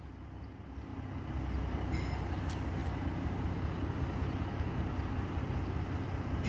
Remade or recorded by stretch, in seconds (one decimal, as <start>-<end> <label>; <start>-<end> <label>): 0.0-6.5 recorded